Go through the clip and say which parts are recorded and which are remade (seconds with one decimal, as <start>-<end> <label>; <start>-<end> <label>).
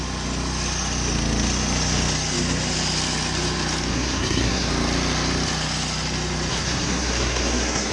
0.0-3.9 recorded; 3.9-4.7 remade; 4.7-6.5 recorded; 6.5-7.9 remade